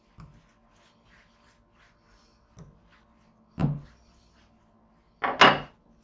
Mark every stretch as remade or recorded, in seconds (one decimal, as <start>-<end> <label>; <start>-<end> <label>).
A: 0.0-6.0 recorded